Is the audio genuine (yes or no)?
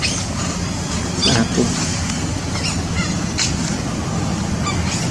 yes